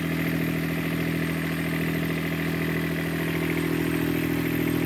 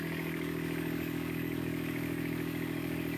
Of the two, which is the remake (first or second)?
second